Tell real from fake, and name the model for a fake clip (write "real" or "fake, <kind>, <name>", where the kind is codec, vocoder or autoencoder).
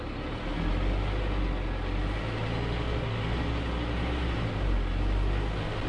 real